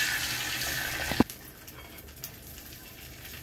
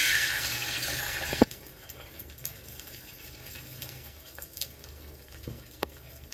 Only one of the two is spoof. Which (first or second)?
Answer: second